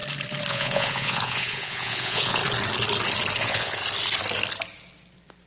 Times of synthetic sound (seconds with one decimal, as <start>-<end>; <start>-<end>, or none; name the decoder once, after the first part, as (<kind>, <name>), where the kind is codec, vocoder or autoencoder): 0.5-2.4 (vocoder, Vocos); 3.4-3.8